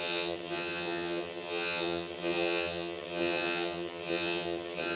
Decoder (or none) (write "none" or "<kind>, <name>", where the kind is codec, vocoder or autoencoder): vocoder, HiFi-GAN